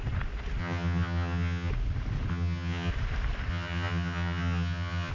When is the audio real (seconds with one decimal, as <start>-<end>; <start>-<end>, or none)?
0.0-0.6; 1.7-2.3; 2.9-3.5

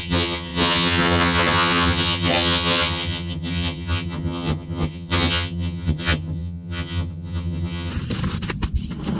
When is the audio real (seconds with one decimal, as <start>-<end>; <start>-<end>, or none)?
7.9-9.2

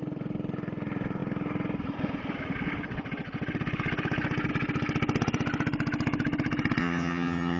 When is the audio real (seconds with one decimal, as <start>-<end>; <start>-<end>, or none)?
0.0-6.8

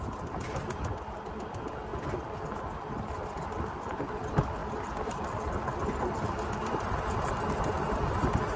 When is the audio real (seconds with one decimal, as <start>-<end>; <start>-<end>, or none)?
0.0-8.6

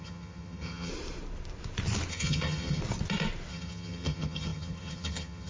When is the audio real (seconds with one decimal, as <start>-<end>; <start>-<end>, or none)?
0.9-2.1; 2.8-3.5

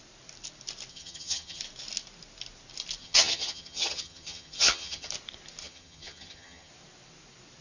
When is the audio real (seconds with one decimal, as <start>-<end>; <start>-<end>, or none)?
0.0-0.9; 1.6-3.0; 5.1-5.6; 6.7-7.6

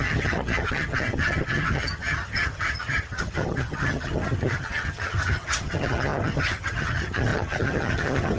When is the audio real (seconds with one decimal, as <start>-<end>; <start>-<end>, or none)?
none

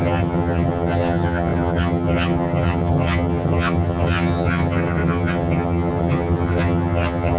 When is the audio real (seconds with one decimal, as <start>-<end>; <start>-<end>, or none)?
none